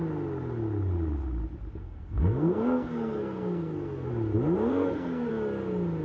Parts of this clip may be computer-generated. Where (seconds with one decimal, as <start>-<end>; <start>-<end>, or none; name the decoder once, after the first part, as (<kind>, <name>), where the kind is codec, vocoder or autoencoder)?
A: 1.8-4.1 (codec, SNAC); 4.7-5.3